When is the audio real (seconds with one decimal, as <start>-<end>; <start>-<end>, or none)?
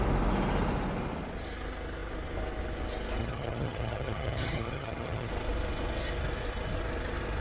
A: 0.0-3.2; 5.3-7.4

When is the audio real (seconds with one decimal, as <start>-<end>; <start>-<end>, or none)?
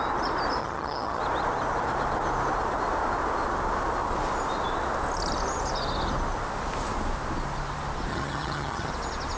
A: 0.0-0.6; 1.2-8.1; 8.9-9.4